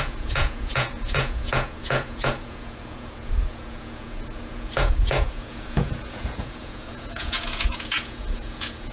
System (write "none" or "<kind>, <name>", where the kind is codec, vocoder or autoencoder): vocoder, Vocos